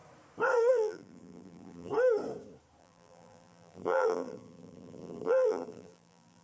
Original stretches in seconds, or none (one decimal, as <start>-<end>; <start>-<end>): 0.0-0.7; 1.9-2.8